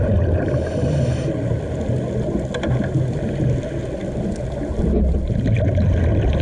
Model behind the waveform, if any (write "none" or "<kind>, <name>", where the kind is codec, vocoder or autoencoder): none